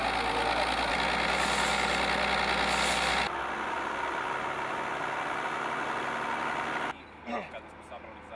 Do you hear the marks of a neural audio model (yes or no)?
no